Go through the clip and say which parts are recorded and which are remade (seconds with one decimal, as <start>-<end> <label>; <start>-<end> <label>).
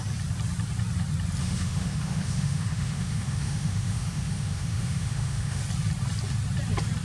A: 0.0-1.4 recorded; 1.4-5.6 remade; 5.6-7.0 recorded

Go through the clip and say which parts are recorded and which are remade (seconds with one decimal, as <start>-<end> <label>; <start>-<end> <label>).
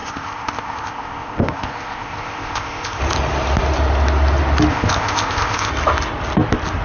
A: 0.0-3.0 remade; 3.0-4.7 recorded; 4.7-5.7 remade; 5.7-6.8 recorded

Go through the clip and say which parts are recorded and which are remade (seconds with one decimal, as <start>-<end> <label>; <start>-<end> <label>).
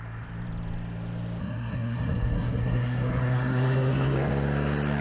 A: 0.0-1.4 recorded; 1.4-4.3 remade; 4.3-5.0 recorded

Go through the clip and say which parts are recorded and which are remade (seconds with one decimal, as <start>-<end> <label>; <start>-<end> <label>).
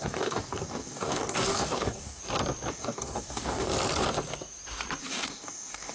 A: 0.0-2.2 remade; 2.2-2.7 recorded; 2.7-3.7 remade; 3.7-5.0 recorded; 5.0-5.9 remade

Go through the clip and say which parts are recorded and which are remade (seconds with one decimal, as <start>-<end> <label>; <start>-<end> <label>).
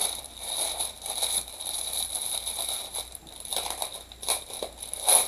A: 0.0-2.8 remade; 2.8-5.3 recorded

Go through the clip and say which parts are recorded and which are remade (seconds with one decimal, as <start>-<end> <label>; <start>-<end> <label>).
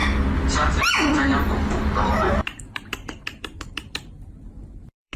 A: 0.0-0.9 recorded; 0.9-5.2 remade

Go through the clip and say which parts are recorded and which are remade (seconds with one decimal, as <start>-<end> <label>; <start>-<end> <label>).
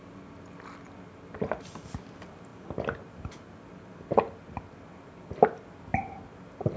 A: 0.0-6.8 recorded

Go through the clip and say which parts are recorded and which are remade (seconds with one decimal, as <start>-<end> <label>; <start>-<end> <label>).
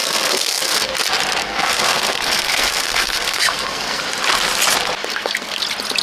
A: 0.0-0.9 remade; 0.9-1.4 recorded; 1.4-4.0 remade; 4.0-5.0 recorded; 5.0-5.6 remade; 5.6-6.0 recorded